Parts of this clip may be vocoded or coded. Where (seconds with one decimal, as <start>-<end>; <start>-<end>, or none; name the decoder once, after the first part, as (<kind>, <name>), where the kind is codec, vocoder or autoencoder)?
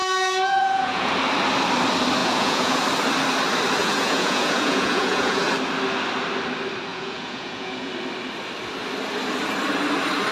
0.0-1.1 (vocoder, Vocos); 2.2-2.8; 3.8-5.5; 6.9-7.9